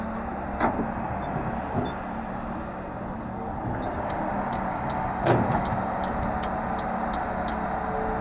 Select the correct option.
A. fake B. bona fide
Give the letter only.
B